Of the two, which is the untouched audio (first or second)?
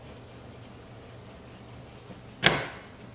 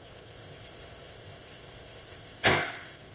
first